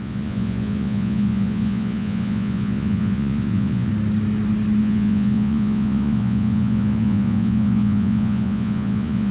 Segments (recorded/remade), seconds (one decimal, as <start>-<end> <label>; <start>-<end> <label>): 0.0-3.9 remade; 3.9-4.8 recorded; 4.8-9.3 remade